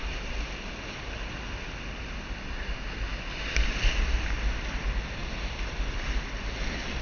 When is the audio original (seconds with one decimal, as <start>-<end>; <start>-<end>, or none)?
0.0-7.0